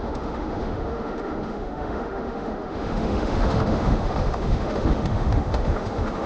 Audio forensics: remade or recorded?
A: remade